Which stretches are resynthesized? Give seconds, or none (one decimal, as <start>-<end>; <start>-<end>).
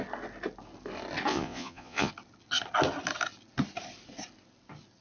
1.3-2.1